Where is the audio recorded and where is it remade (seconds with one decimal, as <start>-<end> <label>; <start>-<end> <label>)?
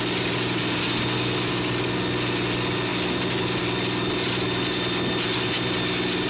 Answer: 0.0-6.3 recorded